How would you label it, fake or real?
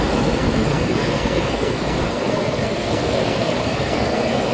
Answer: fake